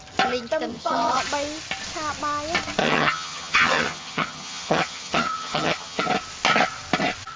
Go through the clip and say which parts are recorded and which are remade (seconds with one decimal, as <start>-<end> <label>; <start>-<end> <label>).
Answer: 0.0-0.7 recorded; 0.7-1.2 remade; 1.2-2.8 recorded; 2.8-6.0 remade; 6.0-7.4 recorded